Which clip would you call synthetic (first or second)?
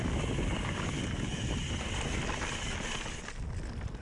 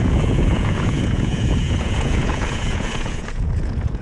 second